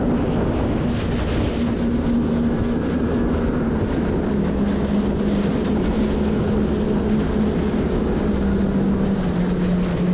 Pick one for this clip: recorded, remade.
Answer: recorded